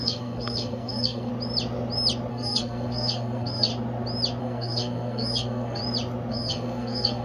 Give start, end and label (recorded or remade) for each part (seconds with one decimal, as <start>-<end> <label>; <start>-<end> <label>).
0.0-1.3 remade; 1.3-2.3 recorded; 2.3-3.7 remade; 3.7-4.4 recorded; 4.4-5.8 remade; 5.8-6.3 recorded; 6.3-7.2 remade